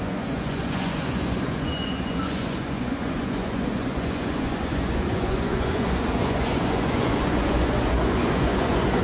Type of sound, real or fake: fake